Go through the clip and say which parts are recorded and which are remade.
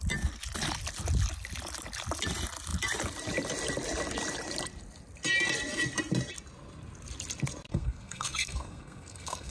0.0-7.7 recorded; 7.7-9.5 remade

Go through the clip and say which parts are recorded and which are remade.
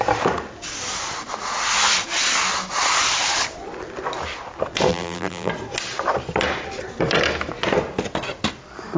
0.0-4.9 recorded; 4.9-5.5 remade; 5.5-9.0 recorded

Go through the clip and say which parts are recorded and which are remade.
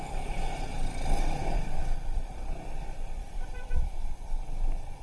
0.0-1.4 recorded; 1.4-4.4 remade; 4.4-5.0 recorded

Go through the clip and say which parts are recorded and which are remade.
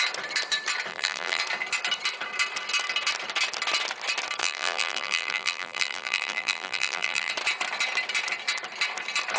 0.0-0.9 recorded; 0.9-1.4 remade; 1.4-4.4 recorded; 4.4-7.3 remade; 7.3-9.4 recorded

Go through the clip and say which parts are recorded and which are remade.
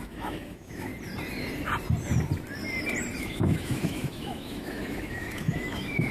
0.0-0.9 remade; 0.9-3.2 recorded; 3.2-6.1 remade